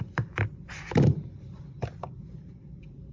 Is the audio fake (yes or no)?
yes